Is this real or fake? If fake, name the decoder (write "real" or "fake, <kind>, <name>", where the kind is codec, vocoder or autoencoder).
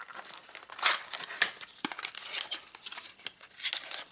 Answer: real